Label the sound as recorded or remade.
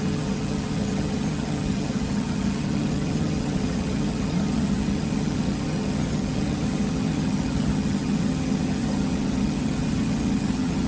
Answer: remade